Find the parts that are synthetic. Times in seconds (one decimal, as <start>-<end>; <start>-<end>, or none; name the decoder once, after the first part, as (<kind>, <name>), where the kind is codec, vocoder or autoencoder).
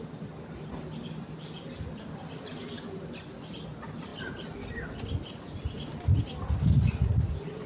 none